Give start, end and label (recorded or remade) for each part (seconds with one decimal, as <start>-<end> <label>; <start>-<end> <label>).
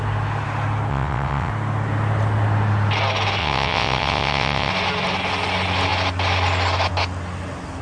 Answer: 0.0-0.9 recorded; 0.9-1.5 remade; 1.5-3.4 recorded; 3.4-4.7 remade; 4.7-7.8 recorded